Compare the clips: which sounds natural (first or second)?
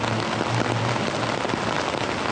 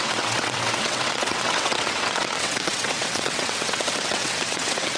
first